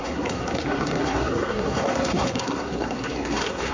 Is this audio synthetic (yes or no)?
yes